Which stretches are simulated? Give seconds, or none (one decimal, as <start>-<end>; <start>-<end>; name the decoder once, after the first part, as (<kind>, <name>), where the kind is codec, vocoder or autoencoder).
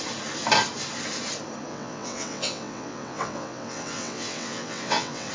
1.7-5.3 (vocoder, WaveNeXt)